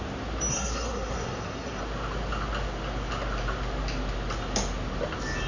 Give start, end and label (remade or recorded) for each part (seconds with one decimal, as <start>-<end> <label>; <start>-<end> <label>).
0.0-0.5 recorded; 0.5-1.8 remade; 1.8-5.5 recorded